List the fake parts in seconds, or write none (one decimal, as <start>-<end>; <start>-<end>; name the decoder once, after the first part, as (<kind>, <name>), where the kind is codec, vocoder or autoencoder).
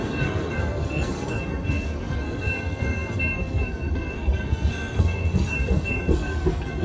0.0-6.8 (codec, SNAC)